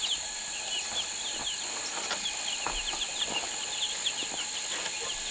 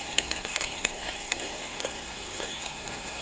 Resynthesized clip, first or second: second